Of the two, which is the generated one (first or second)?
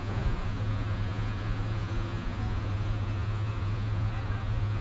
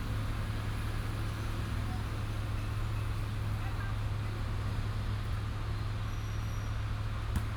first